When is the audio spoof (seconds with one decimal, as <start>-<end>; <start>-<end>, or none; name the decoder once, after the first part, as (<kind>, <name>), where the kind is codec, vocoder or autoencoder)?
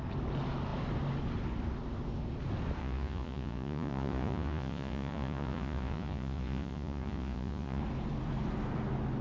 2.8-7.8 (vocoder, Vocos)